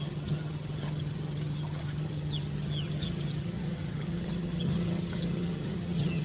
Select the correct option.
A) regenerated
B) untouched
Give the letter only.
A